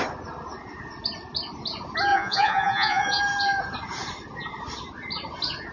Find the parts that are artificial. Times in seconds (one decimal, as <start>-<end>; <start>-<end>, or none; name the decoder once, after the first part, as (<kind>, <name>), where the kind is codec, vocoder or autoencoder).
2.1-3.2 (vocoder, Vocos)